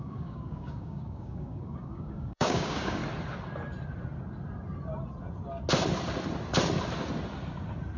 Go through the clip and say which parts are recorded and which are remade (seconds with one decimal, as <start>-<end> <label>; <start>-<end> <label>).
0.0-3.0 remade; 3.0-8.0 recorded